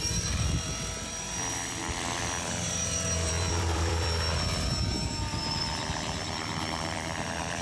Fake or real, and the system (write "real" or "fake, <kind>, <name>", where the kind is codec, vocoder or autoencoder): fake, vocoder, BigVGAN v2